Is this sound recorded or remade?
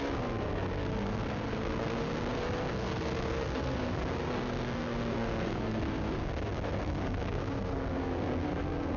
remade